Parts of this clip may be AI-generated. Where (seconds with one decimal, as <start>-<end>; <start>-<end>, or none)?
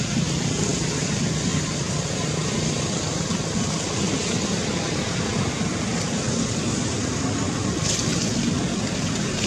none